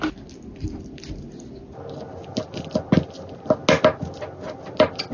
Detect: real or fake real